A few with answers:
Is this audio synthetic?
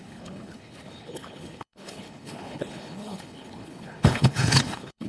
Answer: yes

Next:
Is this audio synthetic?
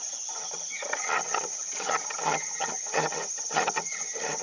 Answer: yes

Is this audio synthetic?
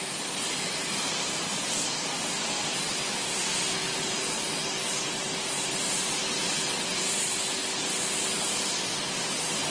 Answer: no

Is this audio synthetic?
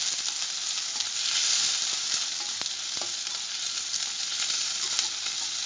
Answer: no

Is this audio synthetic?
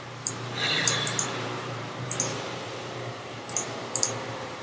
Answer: yes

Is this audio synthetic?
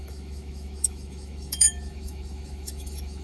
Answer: yes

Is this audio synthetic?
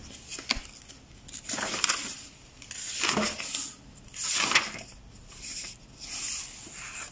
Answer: no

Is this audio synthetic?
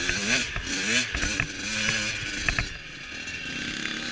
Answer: no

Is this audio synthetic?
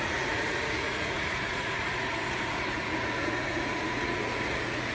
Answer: yes